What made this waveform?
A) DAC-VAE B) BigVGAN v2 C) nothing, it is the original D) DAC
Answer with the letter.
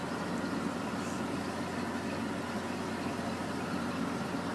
C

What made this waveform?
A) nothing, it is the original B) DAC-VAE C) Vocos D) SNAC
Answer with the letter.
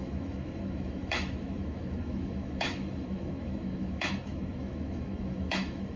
B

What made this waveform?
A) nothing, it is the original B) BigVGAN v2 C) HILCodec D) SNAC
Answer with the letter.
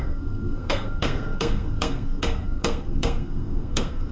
D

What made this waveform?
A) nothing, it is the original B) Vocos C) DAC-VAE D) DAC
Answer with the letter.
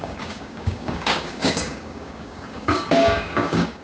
D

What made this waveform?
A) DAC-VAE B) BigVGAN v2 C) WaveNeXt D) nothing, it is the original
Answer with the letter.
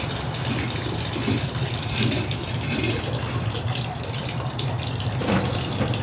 B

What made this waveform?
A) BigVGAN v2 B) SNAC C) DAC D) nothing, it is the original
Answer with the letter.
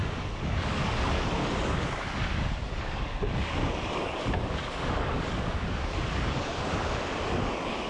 C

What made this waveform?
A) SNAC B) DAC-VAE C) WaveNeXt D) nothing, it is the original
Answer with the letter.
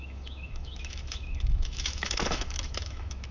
B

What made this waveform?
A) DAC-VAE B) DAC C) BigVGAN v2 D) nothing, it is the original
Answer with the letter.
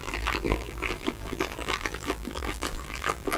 C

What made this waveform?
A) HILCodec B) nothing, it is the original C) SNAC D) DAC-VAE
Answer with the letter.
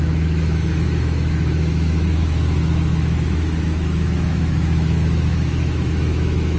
D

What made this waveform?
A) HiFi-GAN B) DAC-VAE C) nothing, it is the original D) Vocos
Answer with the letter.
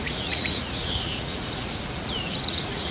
D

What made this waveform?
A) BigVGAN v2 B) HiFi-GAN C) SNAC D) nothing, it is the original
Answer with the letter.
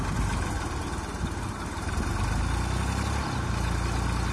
D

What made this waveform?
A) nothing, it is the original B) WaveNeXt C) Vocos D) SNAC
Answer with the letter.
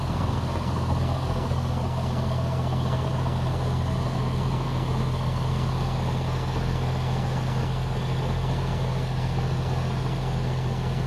D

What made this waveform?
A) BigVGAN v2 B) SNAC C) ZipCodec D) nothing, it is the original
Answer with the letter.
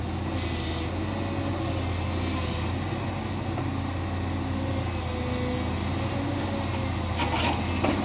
D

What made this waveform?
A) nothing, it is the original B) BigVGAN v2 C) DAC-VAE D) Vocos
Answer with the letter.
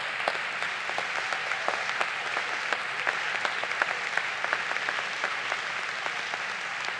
A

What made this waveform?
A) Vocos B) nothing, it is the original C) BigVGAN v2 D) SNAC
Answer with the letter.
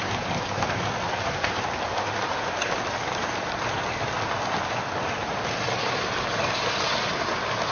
B